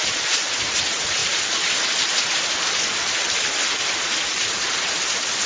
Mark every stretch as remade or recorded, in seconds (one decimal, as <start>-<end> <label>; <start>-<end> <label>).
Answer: 0.0-5.5 recorded